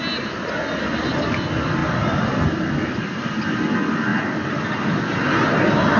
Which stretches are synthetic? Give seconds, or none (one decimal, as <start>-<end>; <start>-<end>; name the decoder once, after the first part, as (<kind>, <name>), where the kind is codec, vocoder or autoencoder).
1.8-3.4 (vocoder, BigVGAN v2); 4.1-5.6